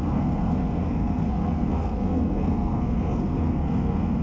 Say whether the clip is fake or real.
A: fake